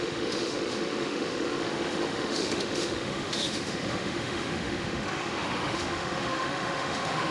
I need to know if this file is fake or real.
fake